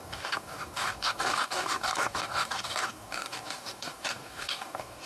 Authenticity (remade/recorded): remade